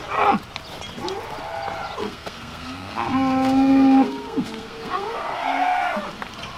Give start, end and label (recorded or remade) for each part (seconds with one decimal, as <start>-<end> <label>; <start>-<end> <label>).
0.0-2.0 recorded; 2.0-6.0 remade; 6.0-6.6 recorded